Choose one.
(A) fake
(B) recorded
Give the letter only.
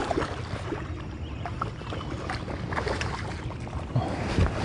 B